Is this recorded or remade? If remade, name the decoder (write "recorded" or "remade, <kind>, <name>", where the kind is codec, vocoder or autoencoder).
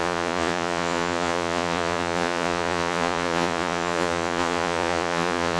remade, vocoder, Vocos